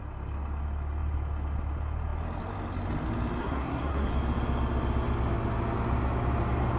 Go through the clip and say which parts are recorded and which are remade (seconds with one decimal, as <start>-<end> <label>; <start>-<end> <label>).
0.0-3.4 recorded; 3.4-4.1 remade; 4.1-6.8 recorded